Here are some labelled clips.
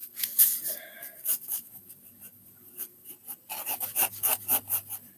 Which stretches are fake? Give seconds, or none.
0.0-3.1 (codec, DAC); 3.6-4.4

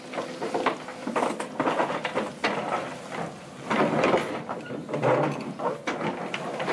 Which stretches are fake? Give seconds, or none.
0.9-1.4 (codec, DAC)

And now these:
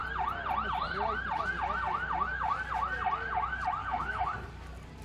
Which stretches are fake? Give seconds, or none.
3.8-4.5 (codec, DAC)

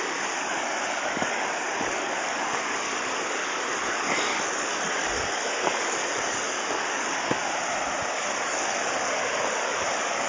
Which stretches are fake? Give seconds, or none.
0.0-7.4 (codec, DAC); 8.1-10.3